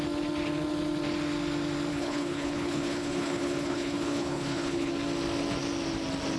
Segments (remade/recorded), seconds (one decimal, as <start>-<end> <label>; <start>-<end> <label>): 0.0-1.9 recorded; 1.9-4.9 remade; 4.9-6.4 recorded